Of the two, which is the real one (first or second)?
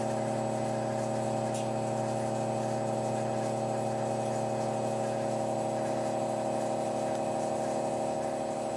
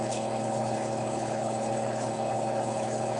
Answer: first